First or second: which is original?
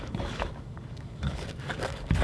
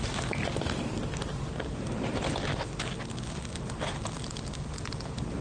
second